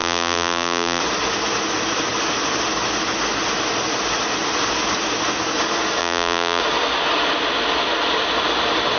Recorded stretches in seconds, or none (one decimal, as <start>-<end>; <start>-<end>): 1.0-6.0; 6.6-9.0